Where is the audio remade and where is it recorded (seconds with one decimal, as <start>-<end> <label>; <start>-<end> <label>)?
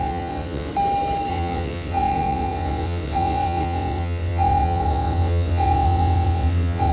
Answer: 0.0-0.7 remade; 0.7-1.3 recorded; 1.3-6.9 remade